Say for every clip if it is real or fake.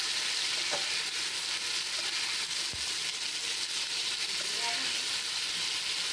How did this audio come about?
real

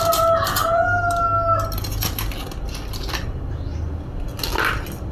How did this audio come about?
real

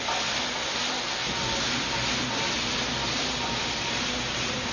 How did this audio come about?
real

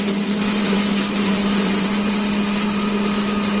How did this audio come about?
real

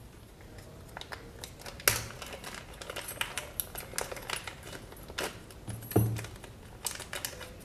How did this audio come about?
real